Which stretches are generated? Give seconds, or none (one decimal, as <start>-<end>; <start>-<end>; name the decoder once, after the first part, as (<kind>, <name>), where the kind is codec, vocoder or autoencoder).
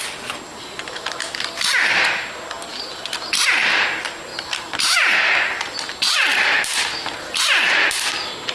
0.5-2.0 (vocoder, BigVGAN v2); 2.7-3.3; 4.3-5.7; 6.3-8.1